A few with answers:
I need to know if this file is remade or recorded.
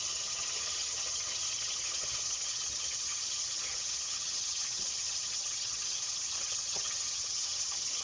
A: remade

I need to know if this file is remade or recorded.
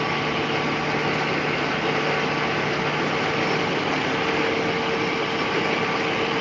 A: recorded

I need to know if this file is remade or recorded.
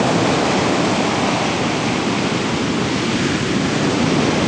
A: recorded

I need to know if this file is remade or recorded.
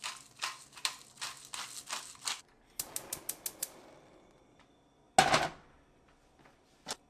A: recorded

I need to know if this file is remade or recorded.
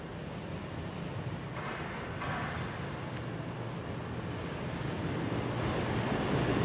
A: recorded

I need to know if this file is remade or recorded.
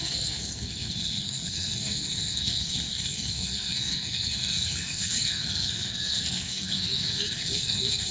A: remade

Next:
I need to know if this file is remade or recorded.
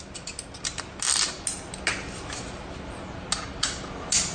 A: recorded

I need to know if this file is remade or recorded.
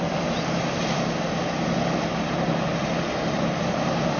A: recorded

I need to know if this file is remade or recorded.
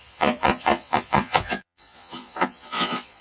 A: remade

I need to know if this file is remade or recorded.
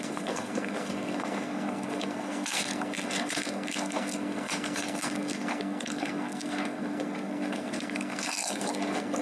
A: remade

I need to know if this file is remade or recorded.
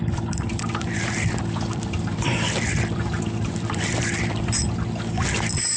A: remade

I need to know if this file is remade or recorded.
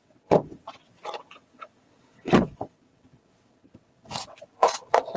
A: remade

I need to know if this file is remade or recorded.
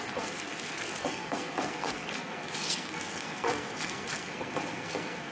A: remade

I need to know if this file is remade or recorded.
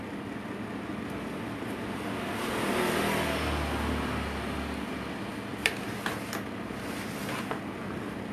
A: recorded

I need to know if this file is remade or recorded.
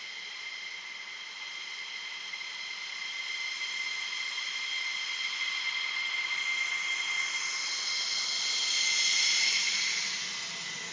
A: recorded